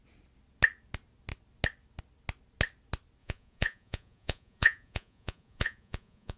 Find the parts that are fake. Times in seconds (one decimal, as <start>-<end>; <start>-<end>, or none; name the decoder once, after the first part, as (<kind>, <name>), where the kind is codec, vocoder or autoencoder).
3.2-6.4 (vocoder, Vocos)